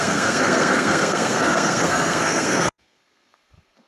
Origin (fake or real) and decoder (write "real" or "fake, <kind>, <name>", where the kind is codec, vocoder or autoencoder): fake, codec, SNAC